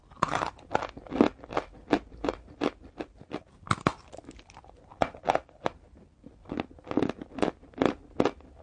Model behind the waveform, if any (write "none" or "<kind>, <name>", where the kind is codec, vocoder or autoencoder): none